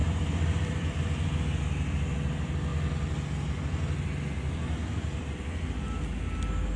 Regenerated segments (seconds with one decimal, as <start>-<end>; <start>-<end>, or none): 0.0-1.6